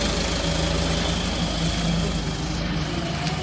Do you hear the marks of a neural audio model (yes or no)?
no